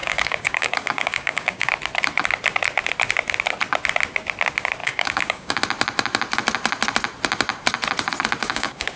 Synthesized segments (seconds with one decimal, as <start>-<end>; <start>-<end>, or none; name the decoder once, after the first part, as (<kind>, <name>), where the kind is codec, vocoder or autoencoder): 0.0-1.7 (codec, DAC); 4.8-5.6; 8.4-9.0